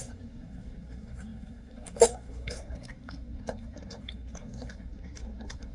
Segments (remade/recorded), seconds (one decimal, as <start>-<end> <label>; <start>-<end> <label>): 0.0-5.7 remade